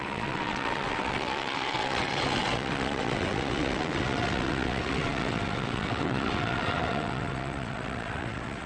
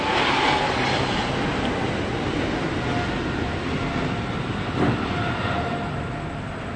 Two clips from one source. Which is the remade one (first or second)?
first